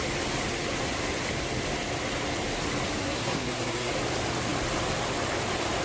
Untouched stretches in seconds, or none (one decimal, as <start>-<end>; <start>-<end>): 0.0-3.0; 3.9-5.8